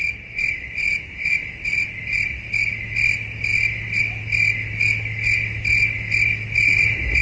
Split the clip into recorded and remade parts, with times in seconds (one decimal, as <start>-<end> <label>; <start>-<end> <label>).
0.0-7.2 recorded